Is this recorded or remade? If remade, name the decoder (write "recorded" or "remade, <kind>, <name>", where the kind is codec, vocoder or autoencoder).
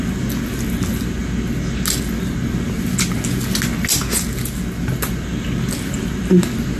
recorded